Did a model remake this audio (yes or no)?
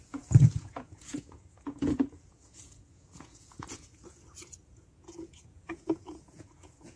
yes